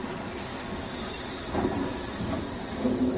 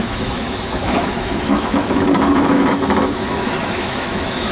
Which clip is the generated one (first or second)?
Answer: second